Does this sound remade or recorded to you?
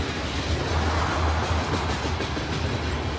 recorded